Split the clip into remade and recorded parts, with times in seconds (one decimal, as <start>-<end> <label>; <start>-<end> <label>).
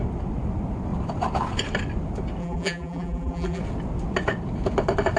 0.0-2.4 recorded; 2.4-3.6 remade; 3.6-5.2 recorded